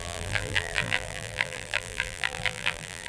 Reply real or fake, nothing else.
fake